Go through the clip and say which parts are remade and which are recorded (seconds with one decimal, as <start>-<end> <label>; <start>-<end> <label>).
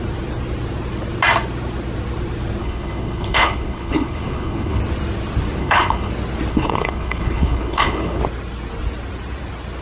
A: 0.0-2.6 recorded; 2.6-4.8 remade; 4.8-5.6 recorded; 5.6-6.1 remade; 6.1-6.5 recorded; 6.5-8.2 remade; 8.2-9.8 recorded